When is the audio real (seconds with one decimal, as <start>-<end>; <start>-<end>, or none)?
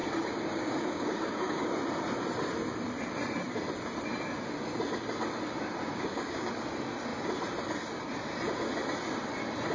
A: 1.7-5.8; 6.5-9.7